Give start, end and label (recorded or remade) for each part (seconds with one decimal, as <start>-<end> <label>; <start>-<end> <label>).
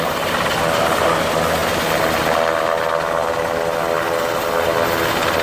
0.0-5.4 recorded